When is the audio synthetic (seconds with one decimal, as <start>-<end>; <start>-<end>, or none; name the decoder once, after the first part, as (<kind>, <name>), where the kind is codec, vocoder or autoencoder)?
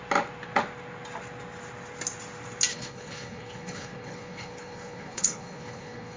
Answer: 2.7-6.2 (codec, HILCodec)